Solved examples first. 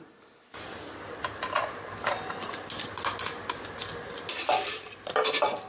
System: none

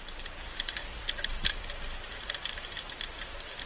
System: none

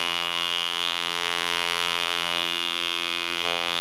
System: vocoder, BigVGAN v2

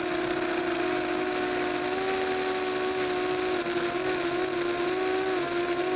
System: none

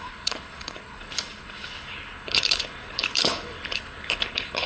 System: codec, HILCodec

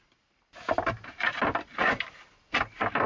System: none